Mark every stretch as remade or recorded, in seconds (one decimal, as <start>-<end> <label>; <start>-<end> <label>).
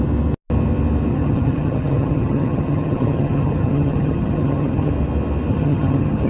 0.0-1.1 recorded; 1.1-4.9 remade; 4.9-5.5 recorded; 5.5-6.3 remade